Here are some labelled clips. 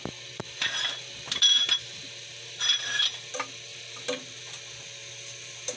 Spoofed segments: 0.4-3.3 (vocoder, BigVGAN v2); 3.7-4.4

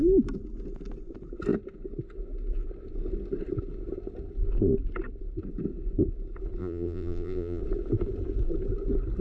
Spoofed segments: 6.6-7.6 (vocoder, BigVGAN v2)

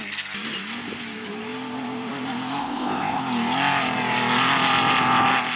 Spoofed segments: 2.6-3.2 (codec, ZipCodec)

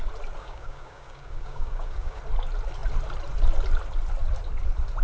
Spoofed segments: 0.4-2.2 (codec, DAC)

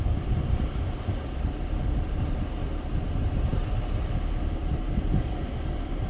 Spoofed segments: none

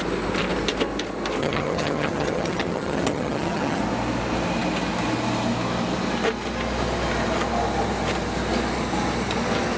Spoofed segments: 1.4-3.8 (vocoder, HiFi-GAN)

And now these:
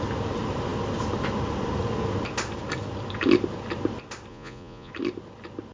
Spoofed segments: 4.3-4.9 (vocoder, Vocos)

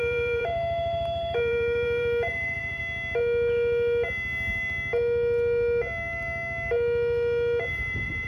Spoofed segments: 0.0-2.8 (vocoder, BigVGAN v2); 7.7-8.3